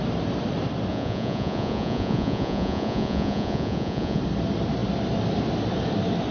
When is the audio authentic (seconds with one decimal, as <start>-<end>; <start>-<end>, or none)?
0.0-0.9; 4.2-6.3